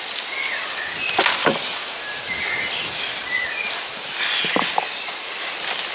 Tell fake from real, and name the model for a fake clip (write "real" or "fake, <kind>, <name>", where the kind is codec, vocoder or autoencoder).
real